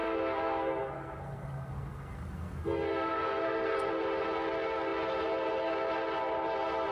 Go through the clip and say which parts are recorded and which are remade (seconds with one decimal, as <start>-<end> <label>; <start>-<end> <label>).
0.0-3.9 remade; 3.9-6.9 recorded